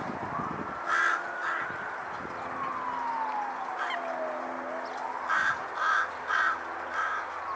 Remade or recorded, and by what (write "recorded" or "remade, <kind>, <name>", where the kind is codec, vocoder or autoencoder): recorded